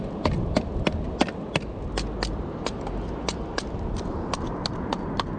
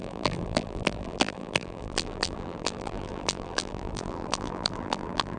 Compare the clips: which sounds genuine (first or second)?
first